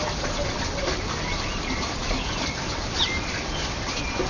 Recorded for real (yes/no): yes